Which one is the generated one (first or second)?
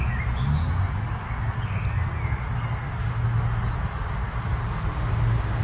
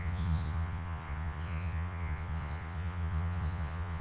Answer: second